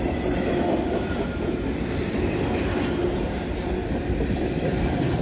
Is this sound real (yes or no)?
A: no